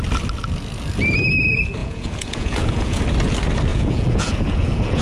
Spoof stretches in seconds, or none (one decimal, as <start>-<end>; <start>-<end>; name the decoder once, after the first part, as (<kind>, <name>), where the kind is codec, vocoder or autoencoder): 1.8-3.0 (vocoder, Vocos); 3.7-5.0